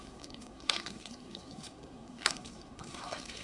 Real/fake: fake